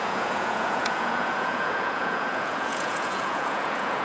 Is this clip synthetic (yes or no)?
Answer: yes